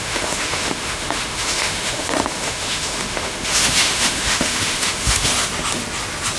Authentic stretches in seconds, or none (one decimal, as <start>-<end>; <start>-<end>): 5.3-6.4